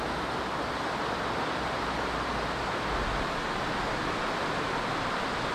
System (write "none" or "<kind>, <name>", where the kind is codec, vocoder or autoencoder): none